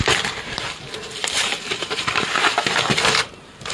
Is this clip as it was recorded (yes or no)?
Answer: no